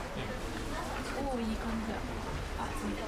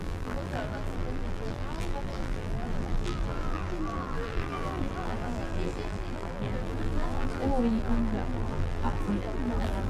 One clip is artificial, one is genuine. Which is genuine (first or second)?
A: first